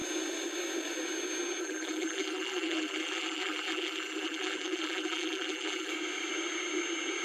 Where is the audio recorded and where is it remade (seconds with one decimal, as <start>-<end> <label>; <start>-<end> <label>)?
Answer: 0.0-1.6 recorded; 1.6-5.9 remade; 5.9-7.2 recorded